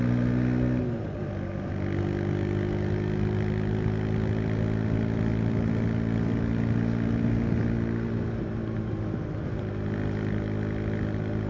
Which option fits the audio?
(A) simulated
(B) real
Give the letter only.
B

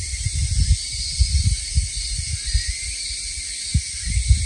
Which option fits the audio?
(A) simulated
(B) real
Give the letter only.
B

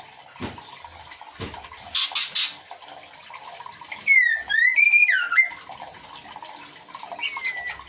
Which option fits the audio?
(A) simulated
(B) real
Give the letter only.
B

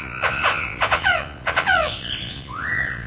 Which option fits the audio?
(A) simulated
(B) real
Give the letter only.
A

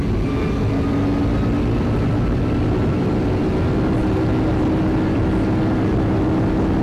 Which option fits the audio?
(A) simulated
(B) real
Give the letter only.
B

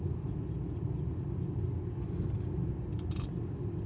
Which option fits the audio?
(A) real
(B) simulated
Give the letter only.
A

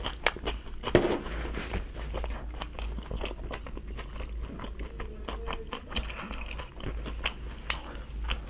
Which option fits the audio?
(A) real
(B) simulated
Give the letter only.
A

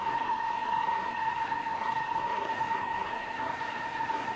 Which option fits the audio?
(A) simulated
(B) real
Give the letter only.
A